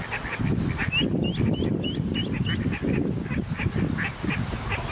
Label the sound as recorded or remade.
recorded